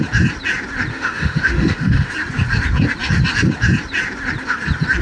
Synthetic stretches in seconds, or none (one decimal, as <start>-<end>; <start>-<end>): 0.9-2.1